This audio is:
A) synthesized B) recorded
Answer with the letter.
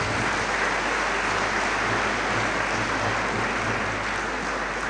B